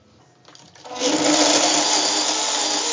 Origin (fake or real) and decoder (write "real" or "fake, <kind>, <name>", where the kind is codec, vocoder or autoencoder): real